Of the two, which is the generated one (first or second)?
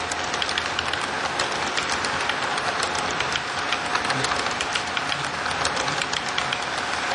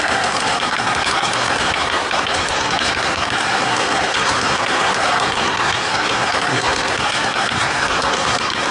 second